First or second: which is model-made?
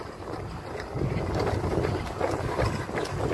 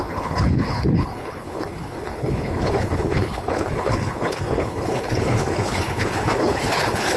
second